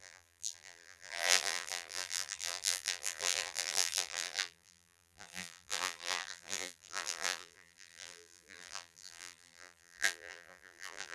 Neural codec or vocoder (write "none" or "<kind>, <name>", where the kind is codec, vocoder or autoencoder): vocoder, BigVGAN v2